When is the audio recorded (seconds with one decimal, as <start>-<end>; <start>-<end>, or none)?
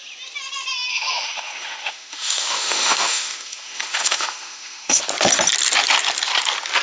0.0-0.9; 5.0-6.8